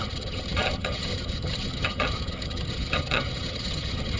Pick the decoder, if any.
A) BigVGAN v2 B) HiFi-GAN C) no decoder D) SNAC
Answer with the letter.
B